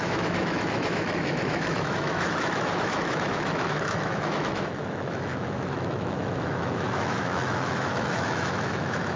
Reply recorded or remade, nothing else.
remade